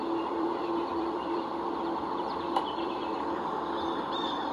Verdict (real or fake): fake